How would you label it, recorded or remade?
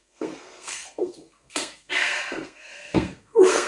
remade